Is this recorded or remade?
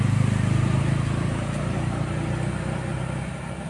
recorded